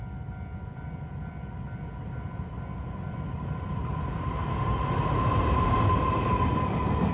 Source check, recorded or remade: recorded